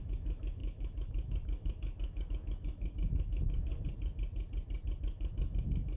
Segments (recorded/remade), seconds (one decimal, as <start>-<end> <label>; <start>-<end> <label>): 0.0-3.7 remade; 3.7-5.0 recorded; 5.0-6.0 remade